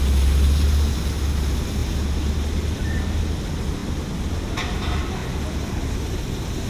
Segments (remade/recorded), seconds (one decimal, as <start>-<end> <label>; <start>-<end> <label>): 0.0-6.7 recorded